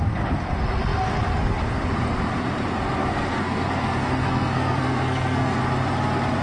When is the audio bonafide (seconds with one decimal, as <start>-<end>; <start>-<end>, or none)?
0.0-3.0; 5.6-6.4